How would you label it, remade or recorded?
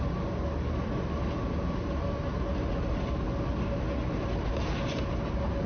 recorded